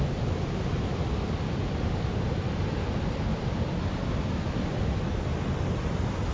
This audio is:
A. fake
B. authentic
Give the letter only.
B